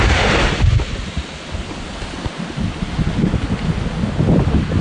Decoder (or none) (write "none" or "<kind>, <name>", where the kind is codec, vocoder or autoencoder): none